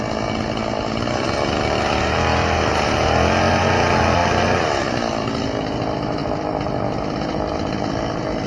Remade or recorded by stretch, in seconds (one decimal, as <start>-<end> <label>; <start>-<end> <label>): 0.0-2.3 recorded; 2.3-3.3 remade; 3.3-4.2 recorded; 4.2-4.9 remade; 4.9-6.2 recorded; 6.2-7.9 remade; 7.9-8.5 recorded